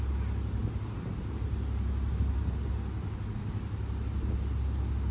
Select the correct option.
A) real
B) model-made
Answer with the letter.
A